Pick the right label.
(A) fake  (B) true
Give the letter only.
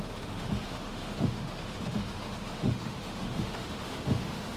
A